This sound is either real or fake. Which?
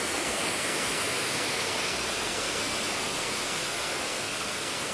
fake